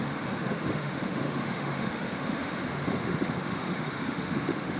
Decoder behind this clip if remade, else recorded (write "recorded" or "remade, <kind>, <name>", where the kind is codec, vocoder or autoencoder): remade, autoencoder, DAC-VAE